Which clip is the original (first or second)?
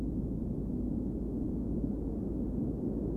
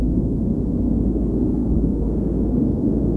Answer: first